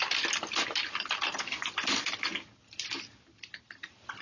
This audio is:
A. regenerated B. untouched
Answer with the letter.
B